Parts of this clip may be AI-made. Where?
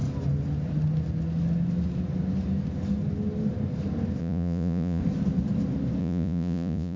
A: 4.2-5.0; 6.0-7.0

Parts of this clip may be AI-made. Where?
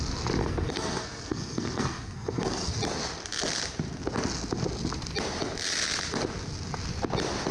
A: 0.4-2.8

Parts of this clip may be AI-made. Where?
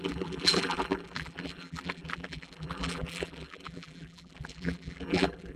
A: 0.0-5.6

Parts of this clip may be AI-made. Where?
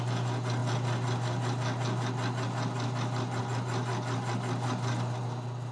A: none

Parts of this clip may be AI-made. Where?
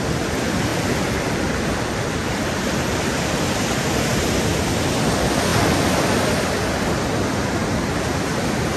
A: 0.7-3.2